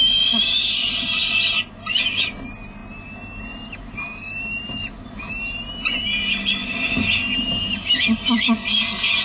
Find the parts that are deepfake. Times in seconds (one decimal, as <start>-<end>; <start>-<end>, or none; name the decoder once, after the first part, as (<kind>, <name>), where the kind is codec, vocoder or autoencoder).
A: none